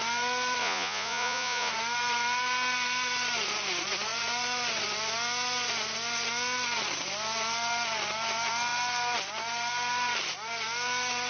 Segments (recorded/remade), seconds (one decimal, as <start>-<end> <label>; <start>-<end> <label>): 0.0-0.6 recorded; 0.6-1.7 remade; 1.7-11.3 recorded